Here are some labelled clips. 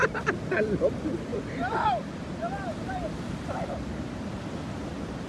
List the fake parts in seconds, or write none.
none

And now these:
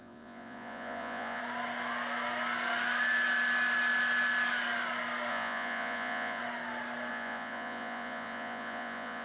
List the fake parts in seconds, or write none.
0.0-1.4 (vocoder, Vocos); 5.3-6.4; 7.1-9.2

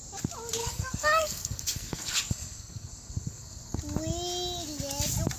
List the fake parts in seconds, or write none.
0.6-3.8 (codec, SNAC)

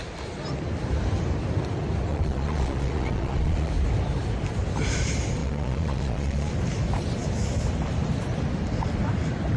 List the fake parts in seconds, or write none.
2.1-3.7 (vocoder, Vocos); 5.4-6.5